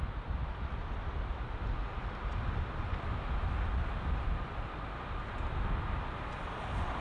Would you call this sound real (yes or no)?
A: yes